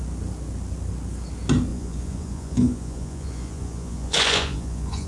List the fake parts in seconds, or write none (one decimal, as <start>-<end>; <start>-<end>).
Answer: 1.7-5.1